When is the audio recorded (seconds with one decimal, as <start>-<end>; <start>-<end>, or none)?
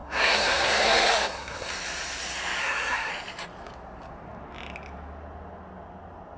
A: 1.7-2.6; 3.1-6.4